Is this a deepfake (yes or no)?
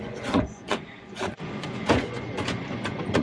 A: yes